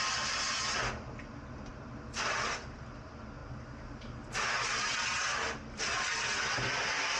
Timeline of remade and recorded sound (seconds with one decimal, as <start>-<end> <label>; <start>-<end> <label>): 0.0-7.2 recorded